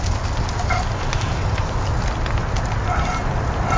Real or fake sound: real